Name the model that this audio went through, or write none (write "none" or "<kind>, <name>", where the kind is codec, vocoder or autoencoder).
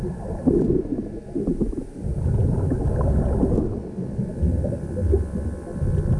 none